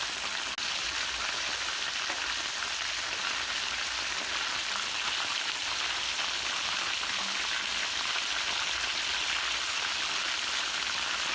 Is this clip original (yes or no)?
yes